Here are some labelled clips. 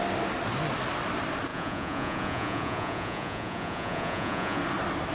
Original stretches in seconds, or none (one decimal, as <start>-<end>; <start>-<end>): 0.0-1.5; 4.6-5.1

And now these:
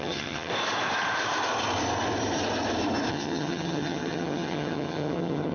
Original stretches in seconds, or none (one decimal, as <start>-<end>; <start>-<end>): 0.5-3.1

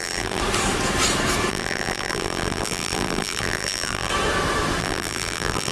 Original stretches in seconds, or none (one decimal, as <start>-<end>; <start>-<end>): 0.4-1.5; 4.1-4.8

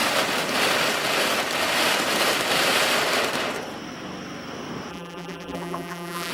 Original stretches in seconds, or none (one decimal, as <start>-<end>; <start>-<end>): 0.0-4.9

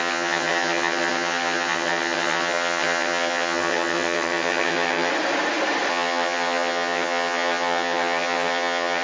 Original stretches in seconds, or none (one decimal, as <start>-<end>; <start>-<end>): 5.1-5.9

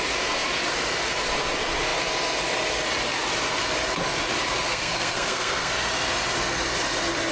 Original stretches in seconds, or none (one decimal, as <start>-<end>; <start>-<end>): 0.0-4.7; 5.7-7.3